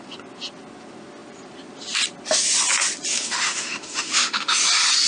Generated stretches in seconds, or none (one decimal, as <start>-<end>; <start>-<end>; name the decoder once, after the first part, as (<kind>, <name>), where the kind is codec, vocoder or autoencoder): 3.1-4.6 (autoencoder, DAC-VAE)

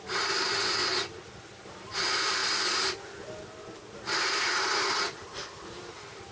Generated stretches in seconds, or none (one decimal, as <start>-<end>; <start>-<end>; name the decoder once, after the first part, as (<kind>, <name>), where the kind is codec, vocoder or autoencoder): 0.0-0.8 (vocoder, BigVGAN v2); 1.6-2.4; 4.2-6.3

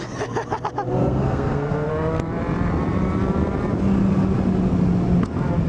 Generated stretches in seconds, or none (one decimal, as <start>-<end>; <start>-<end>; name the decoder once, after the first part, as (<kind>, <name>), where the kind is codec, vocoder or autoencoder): 1.0-1.9 (codec, SNAC)

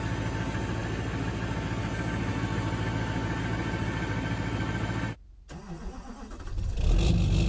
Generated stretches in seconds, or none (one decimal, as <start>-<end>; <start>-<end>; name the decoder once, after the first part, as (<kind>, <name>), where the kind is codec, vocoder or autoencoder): none

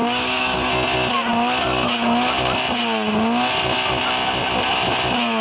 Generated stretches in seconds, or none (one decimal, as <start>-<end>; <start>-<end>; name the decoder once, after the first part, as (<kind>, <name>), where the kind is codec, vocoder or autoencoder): 0.0-0.7 (codec, DAC)

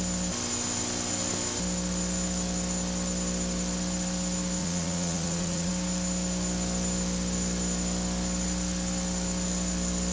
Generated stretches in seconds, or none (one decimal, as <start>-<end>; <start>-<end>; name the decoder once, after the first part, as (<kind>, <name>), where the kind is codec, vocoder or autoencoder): 4.6-5.7 (vocoder, Vocos)

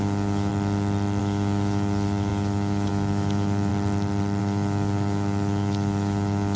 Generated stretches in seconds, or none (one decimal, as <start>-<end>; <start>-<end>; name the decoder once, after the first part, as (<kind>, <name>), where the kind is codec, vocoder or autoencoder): 0.0-0.5 (autoencoder, DAC-VAE); 1.2-3.7; 4.4-6.6

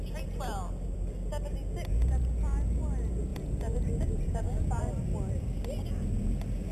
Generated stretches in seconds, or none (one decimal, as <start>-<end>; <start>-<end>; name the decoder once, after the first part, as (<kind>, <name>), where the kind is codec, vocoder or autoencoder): 3.3-4.8 (vocoder, Vocos)